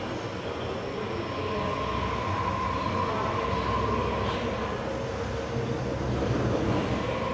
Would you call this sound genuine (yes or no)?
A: yes